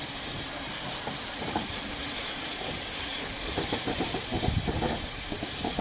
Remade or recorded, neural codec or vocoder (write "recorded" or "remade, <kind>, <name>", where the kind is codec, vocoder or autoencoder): remade, vocoder, BigVGAN v2